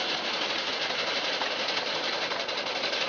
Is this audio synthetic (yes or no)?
no